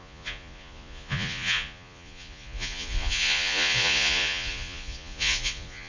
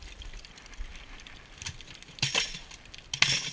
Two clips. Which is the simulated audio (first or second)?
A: first